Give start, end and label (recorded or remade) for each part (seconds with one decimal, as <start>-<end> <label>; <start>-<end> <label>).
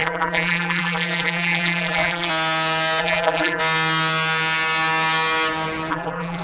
0.0-2.3 remade; 2.3-3.0 recorded; 3.0-3.6 remade; 3.6-5.9 recorded; 5.9-6.4 remade